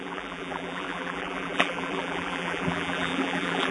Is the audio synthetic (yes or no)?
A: yes